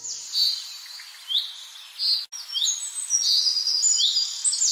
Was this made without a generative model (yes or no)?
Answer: yes